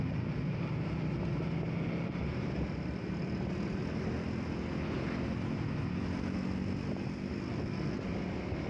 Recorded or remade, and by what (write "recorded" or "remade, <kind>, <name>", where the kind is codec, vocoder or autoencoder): recorded